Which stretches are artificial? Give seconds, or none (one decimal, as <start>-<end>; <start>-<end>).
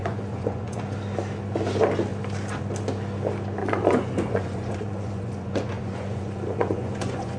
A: 0.0-0.8; 3.6-7.4